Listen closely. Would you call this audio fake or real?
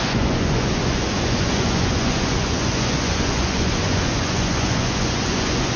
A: fake